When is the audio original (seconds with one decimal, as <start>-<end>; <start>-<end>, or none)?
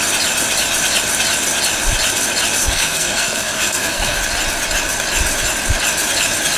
0.0-2.6; 4.2-6.6